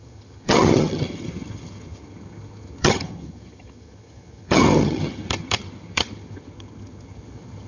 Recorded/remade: remade